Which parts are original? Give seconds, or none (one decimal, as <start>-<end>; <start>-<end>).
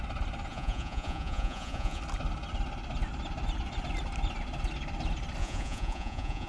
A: 0.0-0.5; 2.0-5.4